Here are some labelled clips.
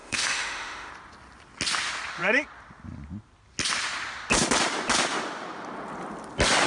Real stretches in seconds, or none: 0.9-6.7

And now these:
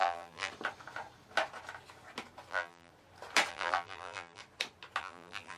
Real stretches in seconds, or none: 0.5-2.5; 2.9-3.5; 4.4-5.0

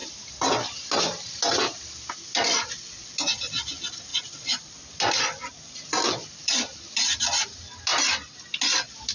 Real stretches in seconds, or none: 0.0-4.1; 6.3-9.1

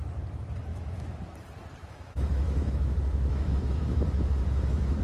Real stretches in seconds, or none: 0.0-0.7; 1.2-1.8

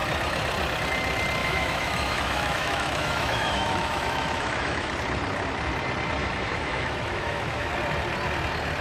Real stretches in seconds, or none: 0.0-1.4; 4.9-6.2; 7.7-8.8

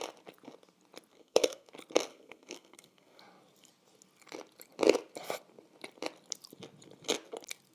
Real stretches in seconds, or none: 0.0-1.1; 1.7-2.1; 3.2-7.7

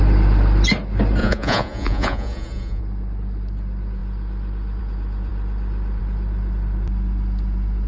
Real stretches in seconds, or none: 0.0-1.2; 2.8-7.9

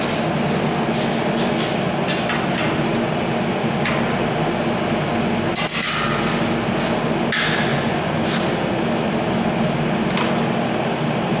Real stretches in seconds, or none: 0.0-7.7; 8.2-11.4